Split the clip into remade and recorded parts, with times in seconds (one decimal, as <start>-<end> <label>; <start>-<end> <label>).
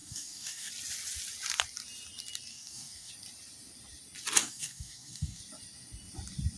0.0-0.7 remade; 0.7-2.5 recorded; 2.5-3.1 remade; 3.1-4.4 recorded; 4.4-5.4 remade; 5.4-6.6 recorded